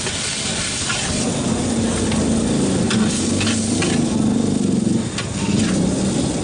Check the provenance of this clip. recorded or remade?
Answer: recorded